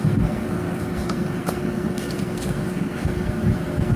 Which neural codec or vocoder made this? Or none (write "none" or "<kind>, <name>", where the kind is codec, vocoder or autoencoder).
codec, SNAC